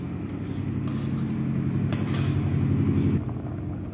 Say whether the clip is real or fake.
real